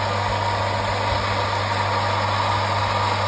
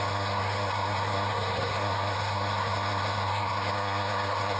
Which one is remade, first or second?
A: second